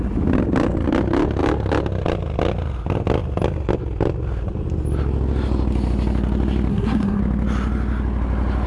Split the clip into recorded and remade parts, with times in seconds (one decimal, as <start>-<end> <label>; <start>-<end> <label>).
0.0-6.7 recorded; 6.7-7.2 remade; 7.2-8.7 recorded